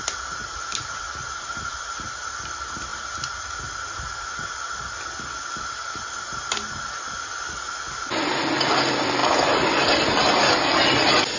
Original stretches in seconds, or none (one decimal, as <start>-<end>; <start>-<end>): 0.0-11.4